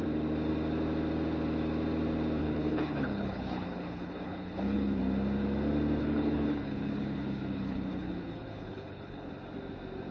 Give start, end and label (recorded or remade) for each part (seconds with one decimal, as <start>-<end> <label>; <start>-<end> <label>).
0.0-2.4 recorded; 2.4-5.0 remade; 5.0-6.0 recorded; 6.0-9.3 remade; 9.3-10.1 recorded